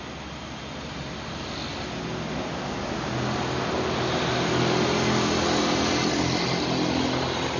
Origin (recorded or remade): recorded